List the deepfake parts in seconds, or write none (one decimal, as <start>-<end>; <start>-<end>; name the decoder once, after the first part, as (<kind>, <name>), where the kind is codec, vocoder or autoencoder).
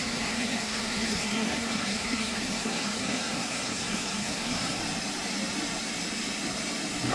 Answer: 0.0-4.8 (codec, SNAC)